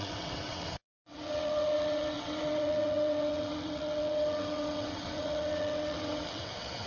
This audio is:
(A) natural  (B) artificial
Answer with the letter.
B